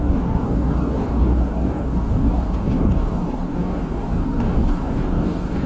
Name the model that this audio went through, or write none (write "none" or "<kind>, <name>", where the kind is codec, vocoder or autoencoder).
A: codec, DAC